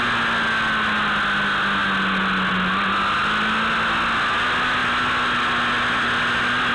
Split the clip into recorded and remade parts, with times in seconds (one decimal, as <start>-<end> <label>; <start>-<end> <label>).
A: 0.0-6.7 recorded